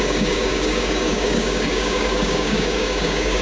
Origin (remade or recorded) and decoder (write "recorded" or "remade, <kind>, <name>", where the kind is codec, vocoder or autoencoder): remade, codec, DAC